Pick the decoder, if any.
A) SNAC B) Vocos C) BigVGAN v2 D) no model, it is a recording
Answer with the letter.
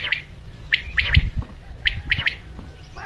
B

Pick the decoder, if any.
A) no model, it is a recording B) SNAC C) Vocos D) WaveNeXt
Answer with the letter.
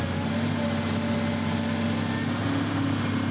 A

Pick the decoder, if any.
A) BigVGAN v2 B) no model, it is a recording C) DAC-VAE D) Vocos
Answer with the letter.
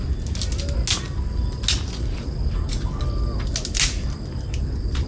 B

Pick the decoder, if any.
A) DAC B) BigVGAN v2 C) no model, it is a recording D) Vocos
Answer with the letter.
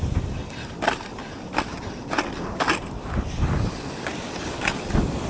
C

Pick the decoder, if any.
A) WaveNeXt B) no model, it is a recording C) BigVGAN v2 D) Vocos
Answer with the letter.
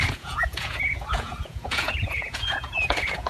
D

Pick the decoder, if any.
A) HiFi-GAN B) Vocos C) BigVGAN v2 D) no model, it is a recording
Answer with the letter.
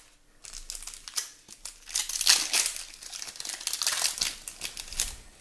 D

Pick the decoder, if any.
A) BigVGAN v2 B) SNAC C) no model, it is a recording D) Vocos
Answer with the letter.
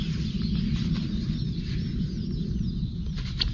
C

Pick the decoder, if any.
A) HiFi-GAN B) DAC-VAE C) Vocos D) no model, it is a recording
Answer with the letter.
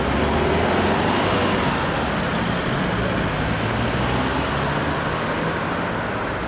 D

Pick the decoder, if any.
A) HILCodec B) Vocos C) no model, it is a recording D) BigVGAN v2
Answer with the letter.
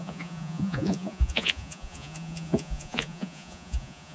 B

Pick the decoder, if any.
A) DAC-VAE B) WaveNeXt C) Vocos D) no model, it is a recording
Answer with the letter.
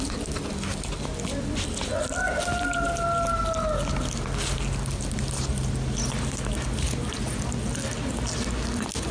D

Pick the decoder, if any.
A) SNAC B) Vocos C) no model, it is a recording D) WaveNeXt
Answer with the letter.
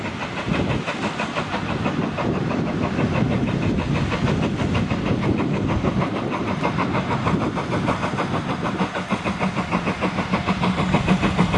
C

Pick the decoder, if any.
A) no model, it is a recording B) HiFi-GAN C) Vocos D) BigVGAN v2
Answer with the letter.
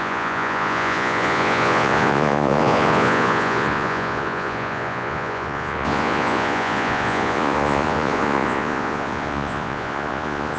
C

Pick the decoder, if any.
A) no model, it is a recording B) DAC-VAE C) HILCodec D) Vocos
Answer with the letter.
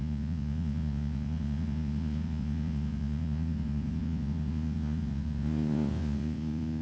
D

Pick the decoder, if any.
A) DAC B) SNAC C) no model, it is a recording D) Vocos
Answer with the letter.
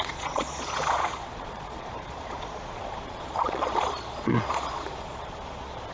D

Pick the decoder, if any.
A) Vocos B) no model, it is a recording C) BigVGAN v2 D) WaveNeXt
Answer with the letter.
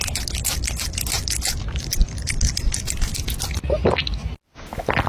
B